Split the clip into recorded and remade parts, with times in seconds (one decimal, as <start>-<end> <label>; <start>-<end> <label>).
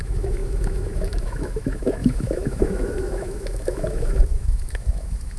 0.0-5.4 remade